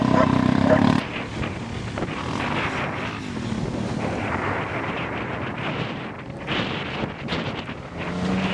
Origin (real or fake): real